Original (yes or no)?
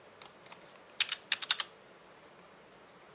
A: yes